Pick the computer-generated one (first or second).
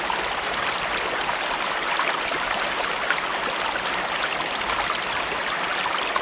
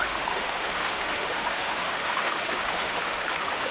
second